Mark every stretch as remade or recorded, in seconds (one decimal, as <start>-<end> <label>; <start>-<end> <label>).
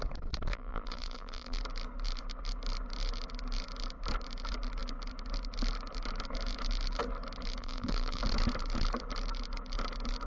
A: 0.0-0.5 recorded; 0.5-1.6 remade; 1.6-7.6 recorded; 7.6-8.2 remade; 8.2-10.3 recorded